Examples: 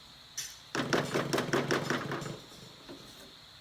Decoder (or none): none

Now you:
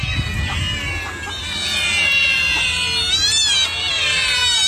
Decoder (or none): none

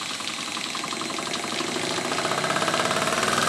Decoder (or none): none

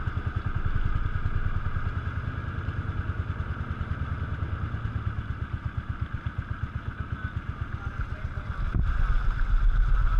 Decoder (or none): none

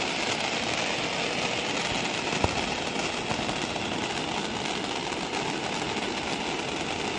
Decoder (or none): none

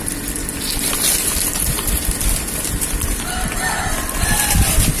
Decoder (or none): vocoder, BigVGAN v2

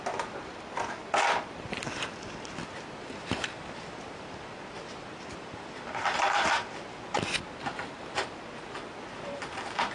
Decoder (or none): vocoder, BigVGAN v2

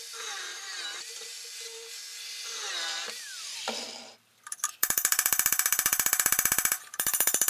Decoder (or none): vocoder, BigVGAN v2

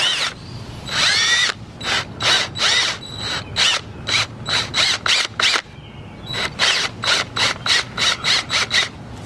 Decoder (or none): none